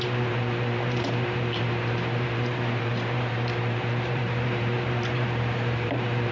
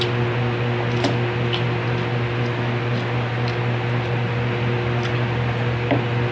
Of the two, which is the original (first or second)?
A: second